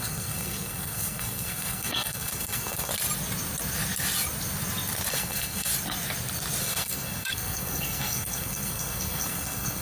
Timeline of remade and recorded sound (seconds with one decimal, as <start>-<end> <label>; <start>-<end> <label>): 0.0-2.9 remade; 2.9-5.1 recorded; 5.1-5.7 remade; 5.7-6.6 recorded; 6.6-9.8 remade